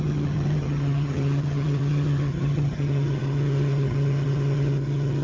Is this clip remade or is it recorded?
remade